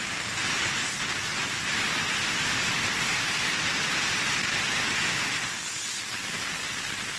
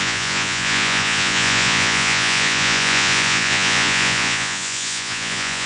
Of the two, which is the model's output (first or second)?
second